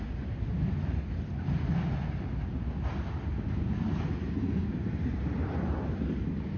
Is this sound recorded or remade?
recorded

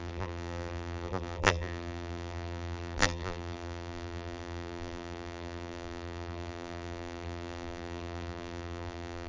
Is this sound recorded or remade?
remade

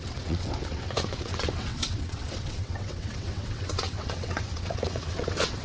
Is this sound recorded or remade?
remade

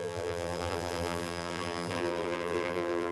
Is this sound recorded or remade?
remade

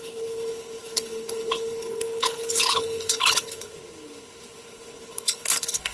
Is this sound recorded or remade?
remade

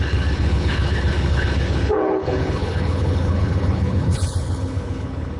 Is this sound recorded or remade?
remade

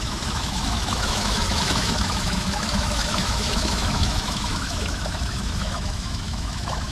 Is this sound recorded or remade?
remade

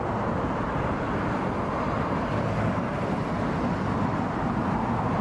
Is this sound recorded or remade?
recorded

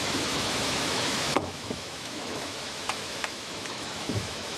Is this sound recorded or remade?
remade